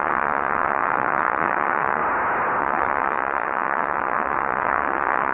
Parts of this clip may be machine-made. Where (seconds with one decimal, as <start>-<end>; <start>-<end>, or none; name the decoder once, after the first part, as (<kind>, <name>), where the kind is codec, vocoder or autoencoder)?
0.0-2.0 (vocoder, WaveNeXt); 2.6-5.3

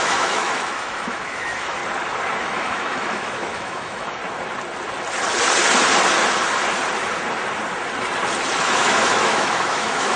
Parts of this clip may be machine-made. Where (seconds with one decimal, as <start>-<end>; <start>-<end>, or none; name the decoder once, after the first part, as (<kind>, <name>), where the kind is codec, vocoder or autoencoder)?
0.0-1.8 (autoencoder, DAC-VAE); 2.4-4.2; 8.6-10.2

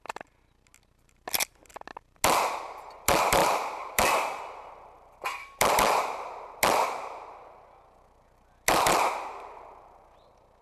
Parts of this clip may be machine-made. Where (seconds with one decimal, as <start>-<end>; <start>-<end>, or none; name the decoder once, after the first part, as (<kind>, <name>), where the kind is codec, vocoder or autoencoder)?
3.4-4.4 (vocoder, BigVGAN v2)

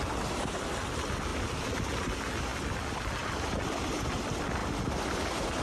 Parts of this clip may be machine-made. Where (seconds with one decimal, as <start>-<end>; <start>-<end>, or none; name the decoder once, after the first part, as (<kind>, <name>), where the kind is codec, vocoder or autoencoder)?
none

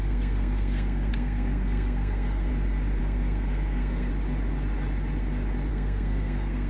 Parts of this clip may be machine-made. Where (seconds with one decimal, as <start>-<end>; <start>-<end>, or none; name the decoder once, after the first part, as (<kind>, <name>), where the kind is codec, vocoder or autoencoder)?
0.0-2.5 (codec, SNAC); 3.0-4.1; 5.7-6.7

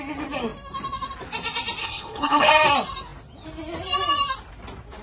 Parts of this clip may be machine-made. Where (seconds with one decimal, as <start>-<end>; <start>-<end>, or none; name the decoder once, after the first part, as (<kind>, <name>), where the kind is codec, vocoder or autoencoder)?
1.8-2.5 (codec, HILCodec)

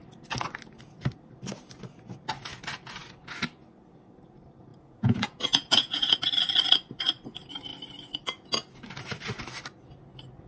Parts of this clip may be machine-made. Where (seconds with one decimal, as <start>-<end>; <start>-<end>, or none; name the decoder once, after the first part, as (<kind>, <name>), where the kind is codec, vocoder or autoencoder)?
4.7-6.2 (vocoder, Vocos)